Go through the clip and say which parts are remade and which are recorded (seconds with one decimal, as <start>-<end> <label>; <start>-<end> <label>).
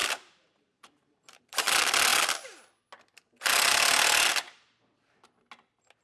0.0-1.4 remade; 1.4-6.0 recorded